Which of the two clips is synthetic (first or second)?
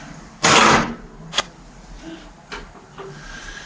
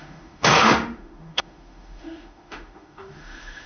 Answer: second